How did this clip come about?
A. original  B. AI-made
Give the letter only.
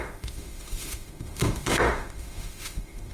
B